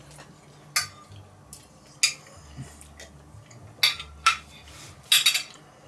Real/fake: real